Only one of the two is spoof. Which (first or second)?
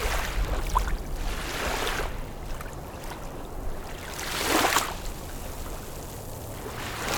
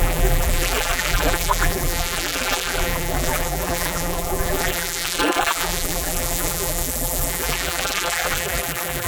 second